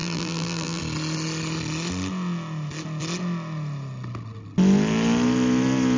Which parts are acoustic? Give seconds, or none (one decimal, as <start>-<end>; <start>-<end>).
0.8-6.0